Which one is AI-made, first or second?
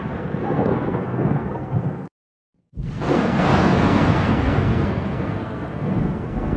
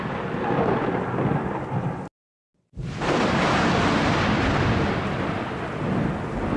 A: first